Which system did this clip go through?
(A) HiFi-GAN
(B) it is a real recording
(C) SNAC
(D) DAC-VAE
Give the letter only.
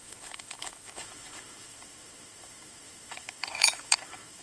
D